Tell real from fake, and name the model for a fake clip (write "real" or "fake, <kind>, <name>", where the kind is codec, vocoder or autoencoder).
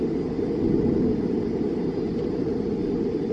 real